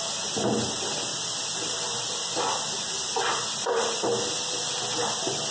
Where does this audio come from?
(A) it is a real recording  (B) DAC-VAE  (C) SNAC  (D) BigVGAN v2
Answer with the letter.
A